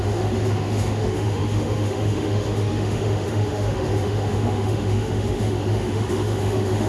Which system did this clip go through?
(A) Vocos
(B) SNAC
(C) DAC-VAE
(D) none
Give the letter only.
C